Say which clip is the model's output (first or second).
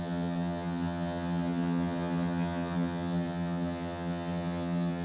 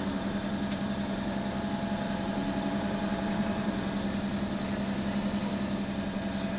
first